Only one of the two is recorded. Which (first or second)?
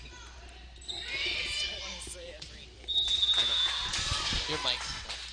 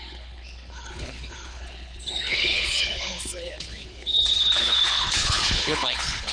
first